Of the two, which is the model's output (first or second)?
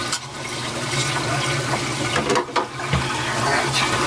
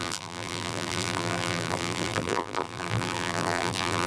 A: second